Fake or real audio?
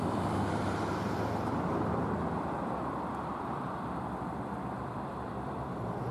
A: fake